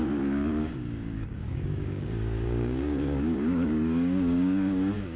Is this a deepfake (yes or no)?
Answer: yes